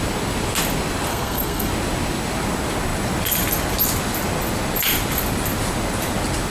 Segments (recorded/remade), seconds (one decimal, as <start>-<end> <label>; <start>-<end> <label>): 0.0-1.1 recorded; 1.1-1.7 remade; 1.7-6.5 recorded